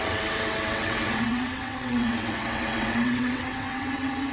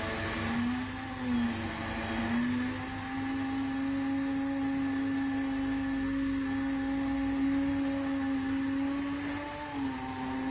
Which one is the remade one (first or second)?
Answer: first